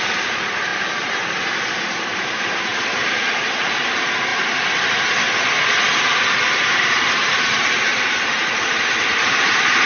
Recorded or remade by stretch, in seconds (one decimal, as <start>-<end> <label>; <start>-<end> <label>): 0.0-9.9 remade